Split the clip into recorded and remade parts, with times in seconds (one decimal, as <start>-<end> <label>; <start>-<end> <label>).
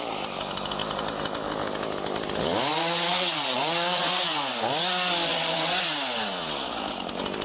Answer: 0.0-2.7 recorded; 2.7-4.3 remade; 4.3-5.3 recorded; 5.3-5.8 remade; 5.8-7.4 recorded